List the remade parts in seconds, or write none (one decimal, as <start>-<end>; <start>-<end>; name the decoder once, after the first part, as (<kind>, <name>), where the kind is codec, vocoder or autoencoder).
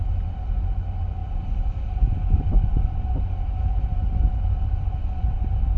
none